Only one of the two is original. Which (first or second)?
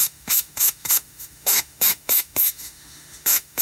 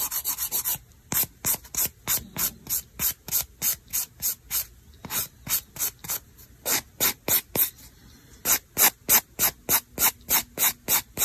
second